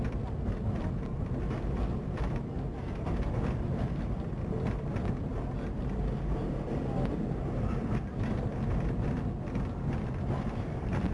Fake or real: real